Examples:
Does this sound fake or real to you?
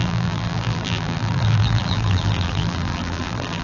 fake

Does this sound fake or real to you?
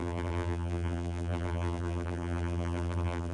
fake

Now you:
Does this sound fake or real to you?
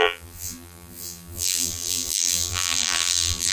fake